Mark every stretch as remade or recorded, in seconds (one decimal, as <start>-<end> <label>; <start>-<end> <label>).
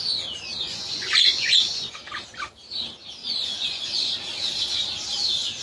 0.0-0.6 recorded; 0.6-1.9 remade; 1.9-3.2 recorded; 3.2-4.1 remade; 4.1-5.6 recorded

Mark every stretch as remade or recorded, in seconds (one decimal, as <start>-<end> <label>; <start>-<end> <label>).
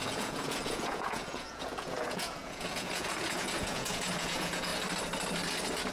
0.0-4.7 remade; 4.7-5.9 recorded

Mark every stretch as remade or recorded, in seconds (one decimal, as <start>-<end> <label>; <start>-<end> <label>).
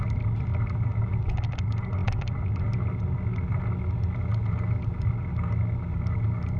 0.0-6.6 recorded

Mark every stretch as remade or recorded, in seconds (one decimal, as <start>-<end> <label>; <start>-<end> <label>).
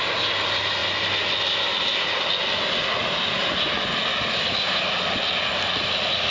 0.0-6.3 recorded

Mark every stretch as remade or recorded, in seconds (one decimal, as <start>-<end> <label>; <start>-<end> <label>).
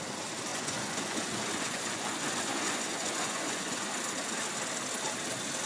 0.0-0.5 recorded; 0.5-3.9 remade; 3.9-5.7 recorded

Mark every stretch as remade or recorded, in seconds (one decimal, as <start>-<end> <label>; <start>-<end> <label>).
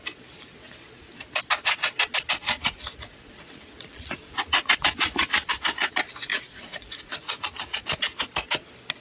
0.0-2.4 recorded; 2.4-5.5 remade; 5.5-6.3 recorded; 6.3-8.0 remade; 8.0-9.0 recorded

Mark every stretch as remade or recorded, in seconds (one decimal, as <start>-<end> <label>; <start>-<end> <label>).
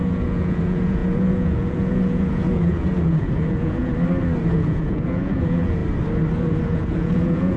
0.0-3.9 remade; 3.9-4.4 recorded; 4.4-5.8 remade; 5.8-6.6 recorded; 6.6-7.6 remade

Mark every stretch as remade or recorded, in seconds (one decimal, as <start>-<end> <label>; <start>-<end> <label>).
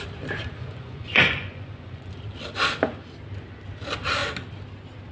0.0-0.6 recorded; 0.6-2.1 remade; 2.1-5.1 recorded